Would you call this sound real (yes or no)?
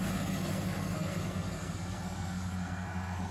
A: no